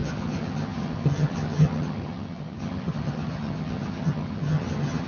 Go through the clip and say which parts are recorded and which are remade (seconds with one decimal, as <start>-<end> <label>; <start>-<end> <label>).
0.0-5.1 remade